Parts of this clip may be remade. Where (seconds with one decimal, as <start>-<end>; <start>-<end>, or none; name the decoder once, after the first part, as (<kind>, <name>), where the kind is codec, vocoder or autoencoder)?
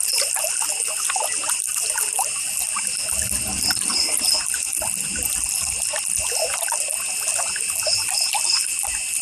1.4-2.5 (vocoder, BigVGAN v2); 3.9-4.4